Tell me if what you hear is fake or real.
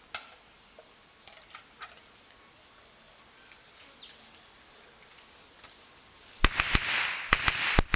real